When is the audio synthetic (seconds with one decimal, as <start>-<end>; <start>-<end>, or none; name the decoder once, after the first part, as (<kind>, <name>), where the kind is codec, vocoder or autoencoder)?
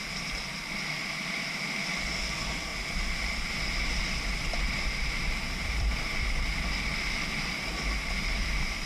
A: 2.7-4.0 (vocoder, BigVGAN v2); 4.4-8.9